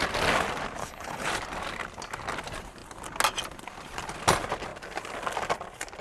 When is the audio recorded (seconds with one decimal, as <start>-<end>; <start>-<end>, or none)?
0.0-0.8; 1.3-6.0